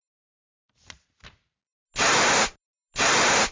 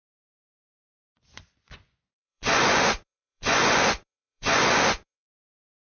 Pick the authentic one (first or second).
first